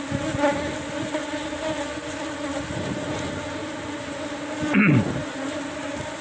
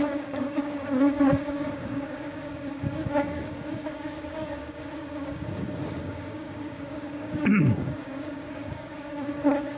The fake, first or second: second